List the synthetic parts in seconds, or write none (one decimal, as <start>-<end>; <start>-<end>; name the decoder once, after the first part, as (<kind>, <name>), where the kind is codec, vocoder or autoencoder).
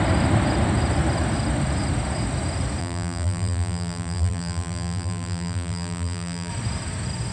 2.8-6.5 (vocoder, BigVGAN v2)